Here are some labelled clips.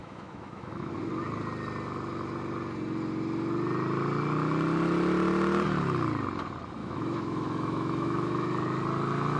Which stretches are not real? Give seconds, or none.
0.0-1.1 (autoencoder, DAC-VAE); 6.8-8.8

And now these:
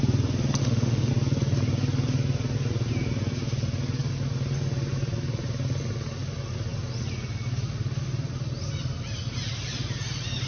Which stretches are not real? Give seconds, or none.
0.6-1.1 (autoencoder, DAC-VAE)

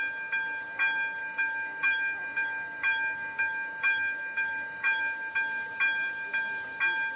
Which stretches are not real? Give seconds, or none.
1.2-5.3 (autoencoder, DAC-VAE)

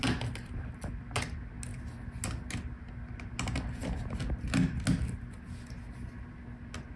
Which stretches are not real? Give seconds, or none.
none

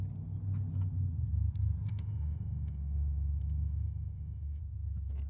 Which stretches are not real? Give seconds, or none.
1.9-4.6 (autoencoder, DAC-VAE)

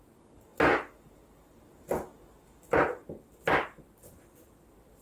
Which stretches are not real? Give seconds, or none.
none

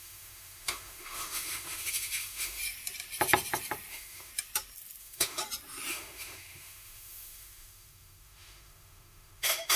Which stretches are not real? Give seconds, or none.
0.0-2.6 (autoencoder, DAC-VAE); 3.9-4.3; 5.0-5.4; 5.9-9.8